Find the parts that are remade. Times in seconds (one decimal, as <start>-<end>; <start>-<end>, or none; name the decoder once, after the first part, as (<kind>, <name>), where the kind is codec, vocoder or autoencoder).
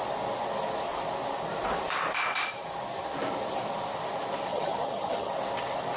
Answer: 4.5-5.3 (vocoder, HiFi-GAN)